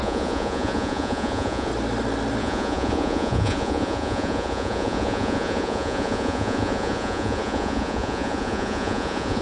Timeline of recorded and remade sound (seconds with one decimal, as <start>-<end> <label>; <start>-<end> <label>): 0.0-1.7 remade; 1.7-2.4 recorded; 2.4-9.4 remade